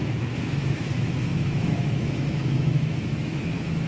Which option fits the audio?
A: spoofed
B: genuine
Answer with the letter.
A